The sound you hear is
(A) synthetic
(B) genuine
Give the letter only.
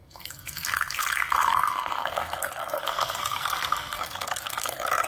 A